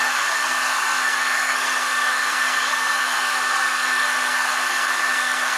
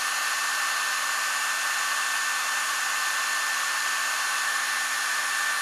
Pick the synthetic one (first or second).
first